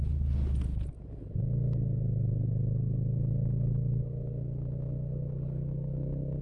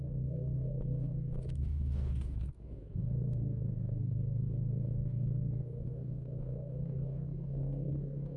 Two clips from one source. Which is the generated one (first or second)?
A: second